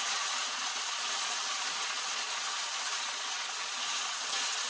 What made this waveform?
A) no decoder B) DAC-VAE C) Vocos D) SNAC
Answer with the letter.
C